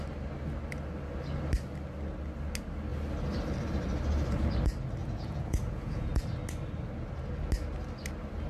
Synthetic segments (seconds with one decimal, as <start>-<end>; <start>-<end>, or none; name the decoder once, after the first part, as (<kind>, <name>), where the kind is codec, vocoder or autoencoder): 5.0-6.1 (vocoder, Vocos)